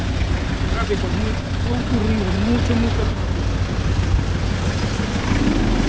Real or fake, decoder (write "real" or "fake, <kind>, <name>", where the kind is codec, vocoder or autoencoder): real